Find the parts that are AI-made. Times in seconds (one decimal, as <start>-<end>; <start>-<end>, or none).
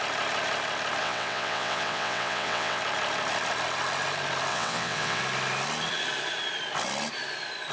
1.0-2.8; 4.5-5.2